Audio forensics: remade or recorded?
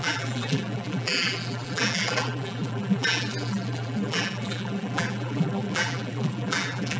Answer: remade